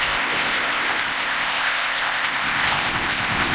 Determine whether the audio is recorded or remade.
remade